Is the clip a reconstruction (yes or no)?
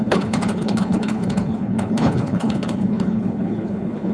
yes